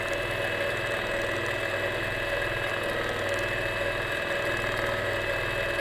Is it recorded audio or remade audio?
recorded